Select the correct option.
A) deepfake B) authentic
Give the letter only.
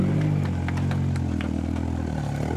B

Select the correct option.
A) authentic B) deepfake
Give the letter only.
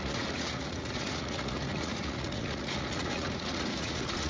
B